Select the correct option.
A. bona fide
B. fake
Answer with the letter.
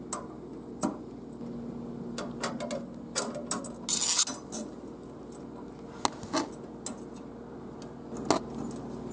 A